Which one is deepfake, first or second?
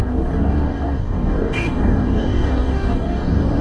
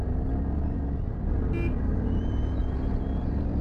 first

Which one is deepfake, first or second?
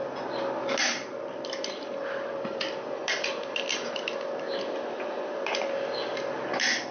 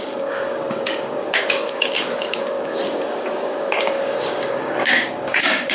second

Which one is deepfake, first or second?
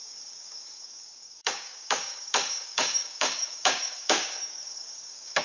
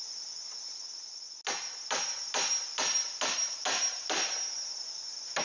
first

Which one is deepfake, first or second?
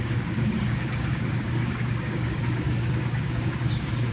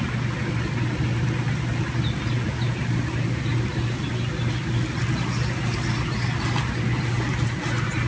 first